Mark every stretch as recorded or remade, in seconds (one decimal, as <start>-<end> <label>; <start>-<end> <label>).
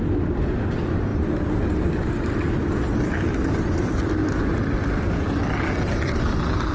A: 0.0-6.7 recorded